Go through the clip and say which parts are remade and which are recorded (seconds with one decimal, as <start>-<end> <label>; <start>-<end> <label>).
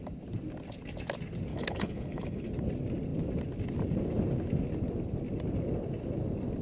0.0-1.5 recorded; 1.5-2.5 remade; 2.5-6.6 recorded